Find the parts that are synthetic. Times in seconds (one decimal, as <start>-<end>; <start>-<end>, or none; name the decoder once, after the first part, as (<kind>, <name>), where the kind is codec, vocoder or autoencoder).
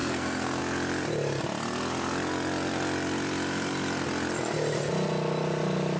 0.0-0.6 (codec, SNAC)